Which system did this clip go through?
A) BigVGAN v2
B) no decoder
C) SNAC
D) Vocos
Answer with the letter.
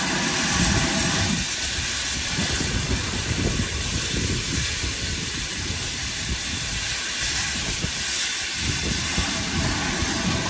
A